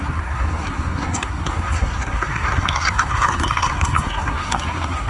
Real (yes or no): no